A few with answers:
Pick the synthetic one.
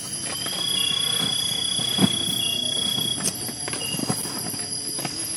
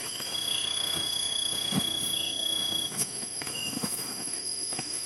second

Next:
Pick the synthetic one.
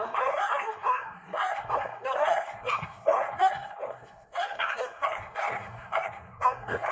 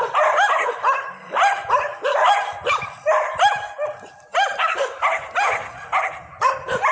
first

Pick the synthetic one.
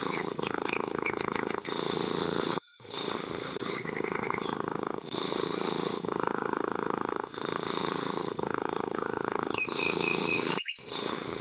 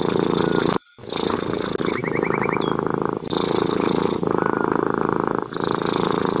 first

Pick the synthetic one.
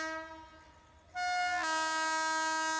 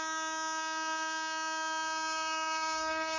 second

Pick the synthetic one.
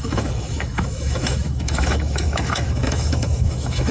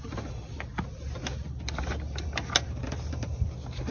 first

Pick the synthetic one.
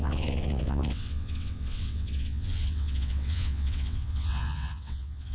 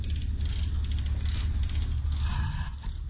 first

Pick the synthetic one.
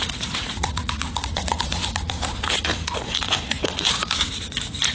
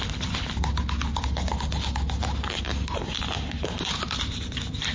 first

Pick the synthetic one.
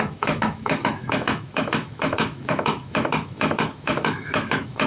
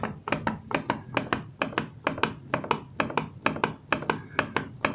first